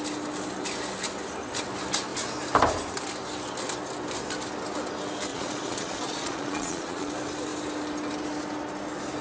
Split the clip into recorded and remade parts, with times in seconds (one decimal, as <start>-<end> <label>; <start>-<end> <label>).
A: 0.0-5.3 recorded; 5.3-7.1 remade; 7.1-9.2 recorded